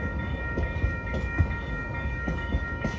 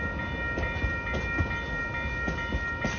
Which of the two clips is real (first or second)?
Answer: second